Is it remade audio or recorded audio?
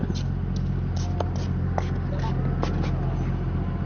recorded